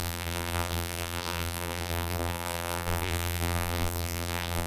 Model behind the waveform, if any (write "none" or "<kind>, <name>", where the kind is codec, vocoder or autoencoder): vocoder, BigVGAN v2